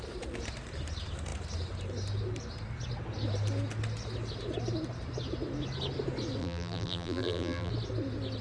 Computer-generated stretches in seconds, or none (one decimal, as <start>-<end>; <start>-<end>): 6.4-7.7

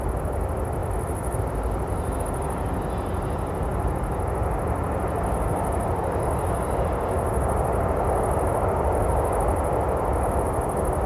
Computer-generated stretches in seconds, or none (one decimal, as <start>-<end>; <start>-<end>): none

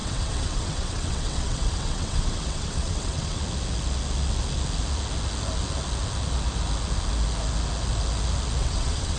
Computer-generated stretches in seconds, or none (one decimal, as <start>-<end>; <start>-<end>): 0.0-3.4; 8.6-9.2

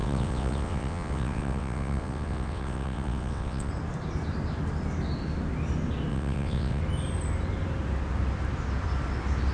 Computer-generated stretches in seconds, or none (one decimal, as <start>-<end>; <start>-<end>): 0.0-3.7; 6.1-6.8

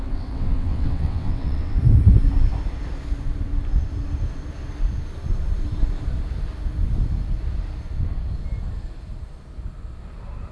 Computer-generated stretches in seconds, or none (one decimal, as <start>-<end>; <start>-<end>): 0.0-1.8

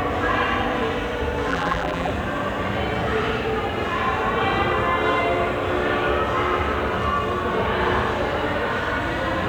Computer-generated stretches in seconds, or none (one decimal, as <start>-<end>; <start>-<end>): 1.5-2.1

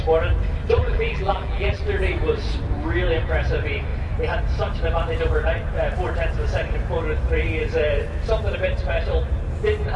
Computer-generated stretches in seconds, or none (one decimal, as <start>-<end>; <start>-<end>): 0.8-1.8